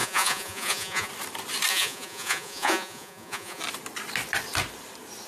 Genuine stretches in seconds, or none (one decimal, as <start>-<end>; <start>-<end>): 1.1-1.7; 3.6-5.3